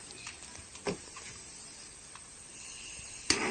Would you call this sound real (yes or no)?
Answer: yes